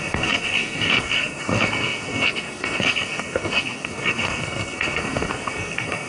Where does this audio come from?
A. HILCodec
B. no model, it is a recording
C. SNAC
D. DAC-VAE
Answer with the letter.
C